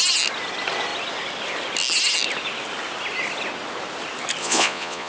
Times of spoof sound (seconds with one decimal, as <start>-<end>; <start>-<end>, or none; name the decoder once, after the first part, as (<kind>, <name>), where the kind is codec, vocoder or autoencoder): 4.4-5.1 (vocoder, Vocos)